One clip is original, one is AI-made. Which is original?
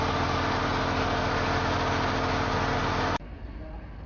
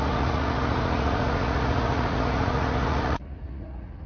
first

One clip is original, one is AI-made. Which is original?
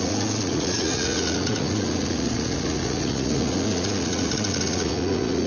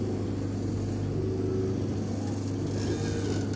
second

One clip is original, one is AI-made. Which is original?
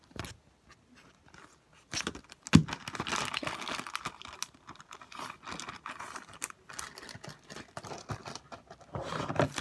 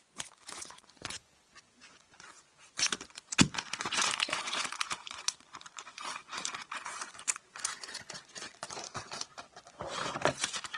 first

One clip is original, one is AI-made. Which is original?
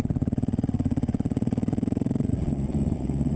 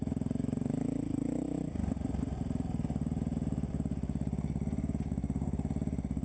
second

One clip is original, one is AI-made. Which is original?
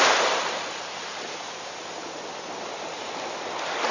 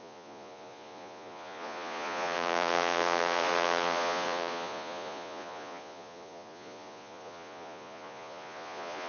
first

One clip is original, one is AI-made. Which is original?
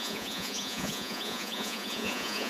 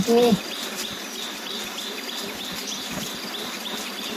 second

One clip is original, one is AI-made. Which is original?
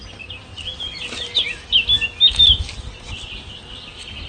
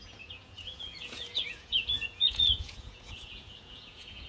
first